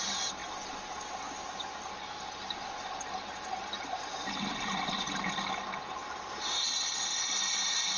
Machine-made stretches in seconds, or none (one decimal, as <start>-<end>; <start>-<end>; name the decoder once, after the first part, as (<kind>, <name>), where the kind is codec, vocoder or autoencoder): none